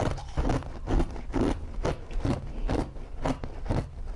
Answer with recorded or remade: recorded